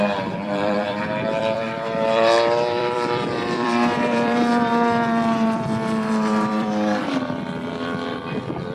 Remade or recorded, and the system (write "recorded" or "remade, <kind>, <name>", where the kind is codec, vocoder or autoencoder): remade, vocoder, BigVGAN v2